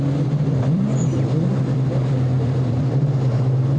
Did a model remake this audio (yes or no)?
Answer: yes